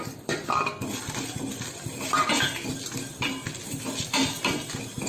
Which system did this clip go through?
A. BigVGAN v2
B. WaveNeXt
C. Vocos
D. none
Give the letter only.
A